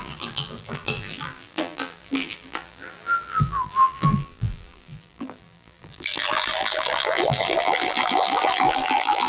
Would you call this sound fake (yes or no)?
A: yes